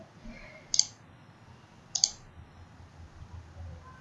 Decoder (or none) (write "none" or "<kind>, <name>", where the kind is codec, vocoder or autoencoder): none